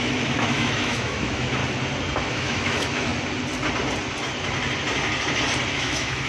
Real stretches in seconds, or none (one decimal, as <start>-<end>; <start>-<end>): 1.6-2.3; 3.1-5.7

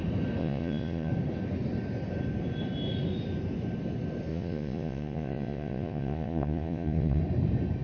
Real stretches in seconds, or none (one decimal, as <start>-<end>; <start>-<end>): 0.0-0.4; 1.1-4.3; 7.2-7.8

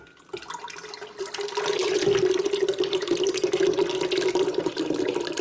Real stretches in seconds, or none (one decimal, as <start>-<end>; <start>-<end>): 0.0-5.4

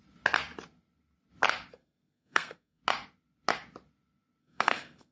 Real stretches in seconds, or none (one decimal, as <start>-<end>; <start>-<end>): 0.0-1.7; 2.8-4.4